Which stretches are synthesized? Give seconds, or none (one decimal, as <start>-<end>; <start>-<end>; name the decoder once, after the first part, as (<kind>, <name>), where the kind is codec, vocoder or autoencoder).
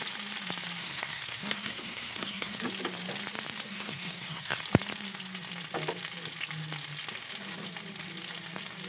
0.8-2.6 (codec, SNAC); 3.7-4.6